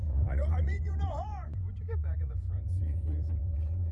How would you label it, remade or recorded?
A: remade